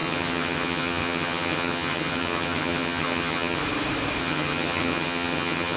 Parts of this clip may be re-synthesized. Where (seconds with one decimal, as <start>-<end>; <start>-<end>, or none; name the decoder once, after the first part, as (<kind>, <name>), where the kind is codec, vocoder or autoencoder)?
0.0-3.6 (vocoder, HiFi-GAN); 4.2-5.8